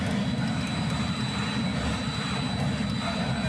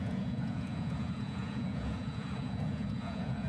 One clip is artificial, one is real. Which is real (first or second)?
first